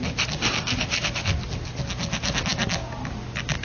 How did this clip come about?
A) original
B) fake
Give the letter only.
A